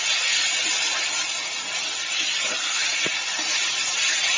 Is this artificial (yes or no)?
no